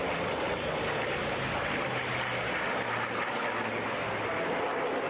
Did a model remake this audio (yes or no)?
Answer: no